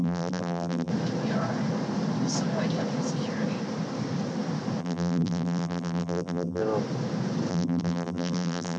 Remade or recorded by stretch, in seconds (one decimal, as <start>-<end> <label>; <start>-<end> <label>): 0.0-0.9 remade; 0.9-4.8 recorded; 4.8-6.6 remade; 6.6-7.5 recorded; 7.5-8.8 remade